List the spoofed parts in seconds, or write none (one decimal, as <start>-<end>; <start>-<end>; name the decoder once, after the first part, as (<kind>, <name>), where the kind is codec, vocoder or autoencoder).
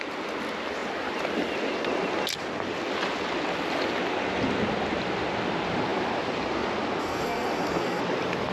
7.0-8.0 (codec, SNAC)